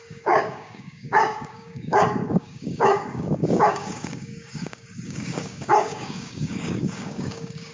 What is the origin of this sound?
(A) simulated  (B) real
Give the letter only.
A